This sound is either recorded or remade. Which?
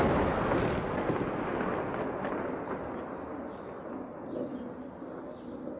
recorded